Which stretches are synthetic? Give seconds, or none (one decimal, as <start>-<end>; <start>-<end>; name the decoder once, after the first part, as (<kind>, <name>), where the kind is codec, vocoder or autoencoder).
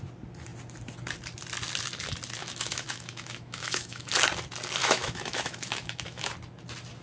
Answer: 2.4-4.1 (autoencoder, DAC-VAE); 4.8-6.3